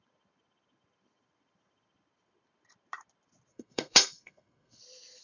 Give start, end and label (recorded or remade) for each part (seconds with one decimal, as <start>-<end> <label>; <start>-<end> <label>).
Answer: 0.0-3.5 recorded; 3.5-4.8 remade; 4.8-5.2 recorded